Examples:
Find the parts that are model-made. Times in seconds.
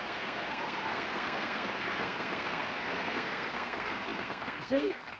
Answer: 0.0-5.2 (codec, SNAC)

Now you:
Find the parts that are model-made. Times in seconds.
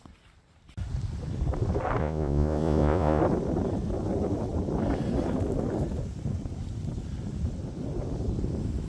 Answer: 2.0-3.2 (vocoder, Vocos)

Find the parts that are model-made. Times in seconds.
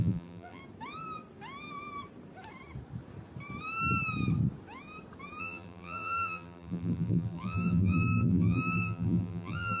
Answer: 0.0-0.6 (vocoder, BigVGAN v2); 5.4-9.8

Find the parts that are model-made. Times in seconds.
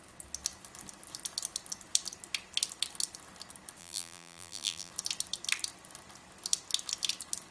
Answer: 3.8-4.9 (vocoder, BigVGAN v2)